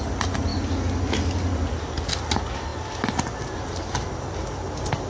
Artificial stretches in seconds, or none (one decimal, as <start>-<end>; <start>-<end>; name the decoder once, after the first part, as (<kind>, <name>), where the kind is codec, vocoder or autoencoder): none